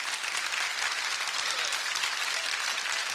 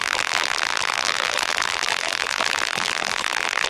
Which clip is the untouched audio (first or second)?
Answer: first